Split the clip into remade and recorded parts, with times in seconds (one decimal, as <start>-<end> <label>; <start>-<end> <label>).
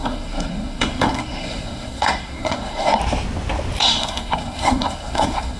0.0-3.0 remade; 3.0-3.8 recorded; 3.8-5.6 remade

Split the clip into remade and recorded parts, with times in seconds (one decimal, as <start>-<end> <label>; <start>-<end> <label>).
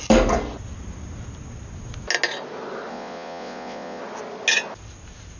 0.0-2.9 recorded; 2.9-4.0 remade; 4.0-5.4 recorded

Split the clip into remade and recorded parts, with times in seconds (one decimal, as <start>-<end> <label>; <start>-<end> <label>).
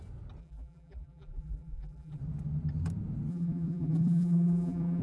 0.0-0.4 recorded; 0.4-2.2 remade; 2.2-3.3 recorded; 3.3-5.0 remade